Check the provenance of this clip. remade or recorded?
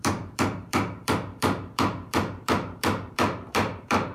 remade